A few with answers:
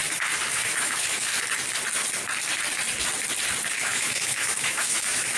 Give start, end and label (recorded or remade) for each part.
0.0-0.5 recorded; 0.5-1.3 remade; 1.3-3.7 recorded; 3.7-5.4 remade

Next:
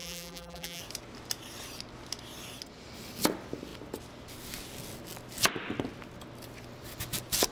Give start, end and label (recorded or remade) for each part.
0.0-0.8 remade; 0.8-7.5 recorded

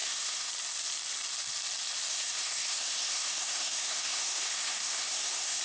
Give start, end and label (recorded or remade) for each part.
0.0-0.5 remade; 0.5-2.1 recorded; 2.1-5.6 remade